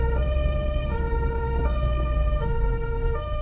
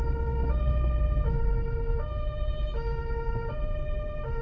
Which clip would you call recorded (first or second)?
second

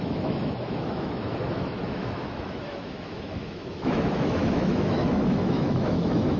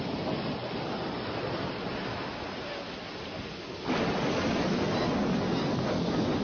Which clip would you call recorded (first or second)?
second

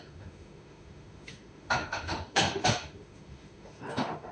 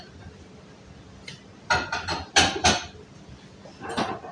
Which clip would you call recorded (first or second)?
second